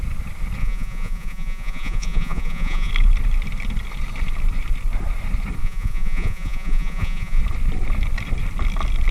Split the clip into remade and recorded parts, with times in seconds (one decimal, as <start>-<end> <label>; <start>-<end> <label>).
0.0-0.6 recorded; 0.6-2.9 remade; 2.9-5.6 recorded; 5.6-7.4 remade; 7.4-9.1 recorded

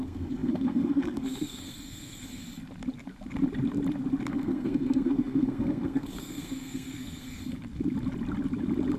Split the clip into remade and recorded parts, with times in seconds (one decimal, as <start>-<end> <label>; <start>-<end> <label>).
0.0-2.4 remade; 2.4-4.3 recorded; 4.3-7.4 remade; 7.4-9.0 recorded

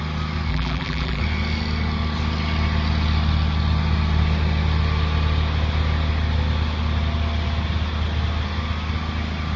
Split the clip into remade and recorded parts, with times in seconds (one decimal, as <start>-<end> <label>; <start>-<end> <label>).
0.0-0.5 recorded; 0.5-1.2 remade; 1.2-9.6 recorded

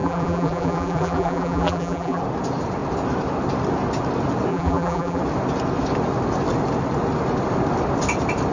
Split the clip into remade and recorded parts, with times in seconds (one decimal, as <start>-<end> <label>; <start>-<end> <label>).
0.0-2.2 remade; 2.2-4.5 recorded; 4.5-5.2 remade; 5.2-8.5 recorded